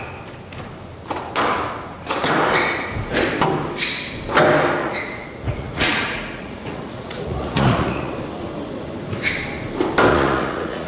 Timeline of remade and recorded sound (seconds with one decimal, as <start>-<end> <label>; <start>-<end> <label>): 0.0-4.8 recorded; 4.8-8.1 remade; 8.1-10.1 recorded; 10.1-10.9 remade